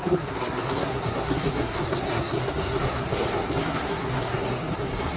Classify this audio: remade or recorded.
remade